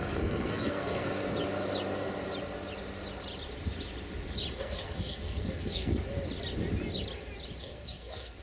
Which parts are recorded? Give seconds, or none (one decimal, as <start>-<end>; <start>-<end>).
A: 1.2-4.6; 5.9-7.6